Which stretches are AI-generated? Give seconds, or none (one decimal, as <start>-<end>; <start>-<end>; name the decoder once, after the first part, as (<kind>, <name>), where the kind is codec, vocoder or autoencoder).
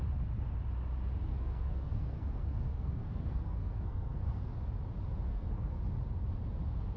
1.3-4.5 (codec, SNAC); 5.3-5.8